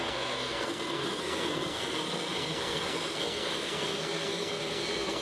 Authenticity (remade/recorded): remade